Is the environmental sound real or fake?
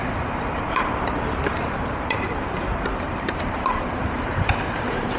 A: fake